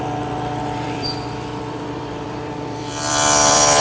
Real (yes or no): no